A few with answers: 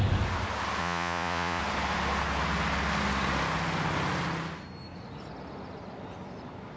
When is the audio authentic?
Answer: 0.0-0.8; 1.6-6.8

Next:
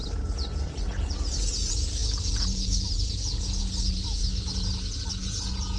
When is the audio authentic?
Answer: 0.0-0.8; 4.2-5.1